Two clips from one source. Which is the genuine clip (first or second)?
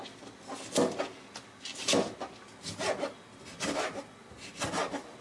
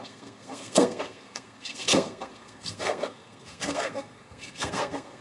first